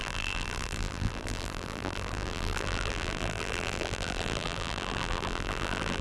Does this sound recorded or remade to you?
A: remade